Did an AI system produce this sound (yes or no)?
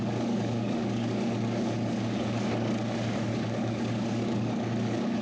yes